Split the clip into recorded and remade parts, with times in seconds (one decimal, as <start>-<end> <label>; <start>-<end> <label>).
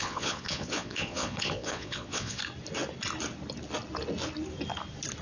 0.0-2.4 remade; 2.4-5.2 recorded